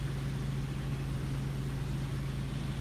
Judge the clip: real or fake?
real